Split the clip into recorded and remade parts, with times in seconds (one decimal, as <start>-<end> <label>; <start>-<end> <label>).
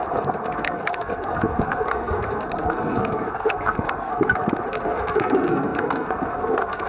0.0-6.9 remade